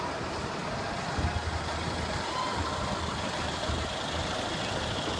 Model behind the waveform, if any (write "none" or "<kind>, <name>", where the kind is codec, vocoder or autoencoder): none